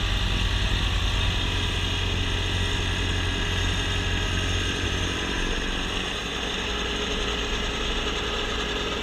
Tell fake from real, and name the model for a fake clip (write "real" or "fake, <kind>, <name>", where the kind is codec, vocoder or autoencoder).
real